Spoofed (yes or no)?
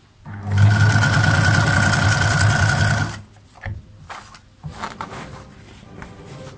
no